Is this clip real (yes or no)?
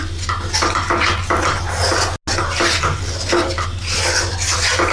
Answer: yes